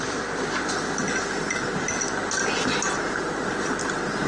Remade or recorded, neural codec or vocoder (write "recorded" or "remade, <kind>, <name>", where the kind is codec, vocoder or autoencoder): recorded